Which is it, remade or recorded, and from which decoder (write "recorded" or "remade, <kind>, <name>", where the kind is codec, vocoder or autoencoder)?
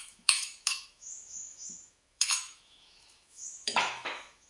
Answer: remade, autoencoder, DAC-VAE